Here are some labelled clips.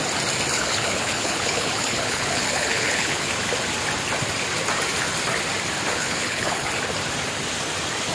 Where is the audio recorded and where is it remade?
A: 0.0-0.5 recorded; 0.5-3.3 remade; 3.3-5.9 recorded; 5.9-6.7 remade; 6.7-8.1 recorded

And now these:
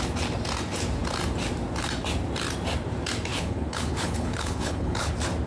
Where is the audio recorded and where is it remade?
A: 0.0-3.3 recorded; 3.3-5.1 remade; 5.1-5.5 recorded

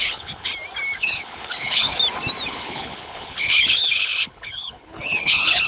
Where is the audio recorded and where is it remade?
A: 0.0-0.5 remade; 0.5-1.0 recorded; 1.0-1.9 remade; 1.9-2.5 recorded; 2.5-5.7 remade